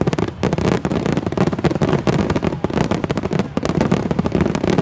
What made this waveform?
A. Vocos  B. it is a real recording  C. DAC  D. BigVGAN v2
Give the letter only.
B